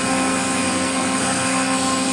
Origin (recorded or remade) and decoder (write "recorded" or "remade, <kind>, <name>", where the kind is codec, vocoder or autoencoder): remade, codec, SNAC